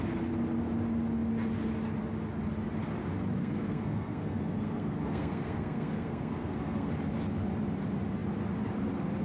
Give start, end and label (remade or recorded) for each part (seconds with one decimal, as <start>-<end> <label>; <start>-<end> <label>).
0.0-3.4 recorded; 3.4-6.9 remade; 6.9-9.2 recorded